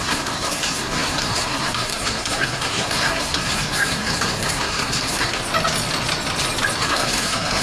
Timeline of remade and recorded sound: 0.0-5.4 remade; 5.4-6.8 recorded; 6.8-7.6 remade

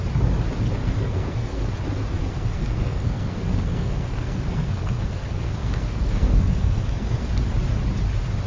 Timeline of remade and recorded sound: 0.0-0.8 recorded; 0.8-1.7 remade; 1.7-2.2 recorded; 2.2-7.3 remade; 7.3-8.5 recorded

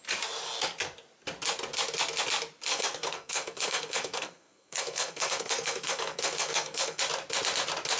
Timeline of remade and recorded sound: 0.0-2.7 recorded; 2.7-7.0 remade; 7.0-8.0 recorded